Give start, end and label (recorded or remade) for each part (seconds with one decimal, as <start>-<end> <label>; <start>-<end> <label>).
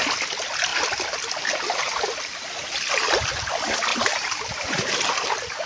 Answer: 0.0-3.9 recorded; 3.9-5.1 remade; 5.1-5.7 recorded